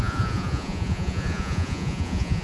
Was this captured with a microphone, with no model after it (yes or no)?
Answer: no